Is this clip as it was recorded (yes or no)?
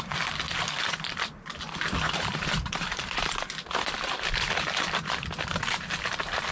no